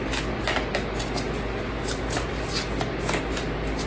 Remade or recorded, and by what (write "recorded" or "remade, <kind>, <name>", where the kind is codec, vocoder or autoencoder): recorded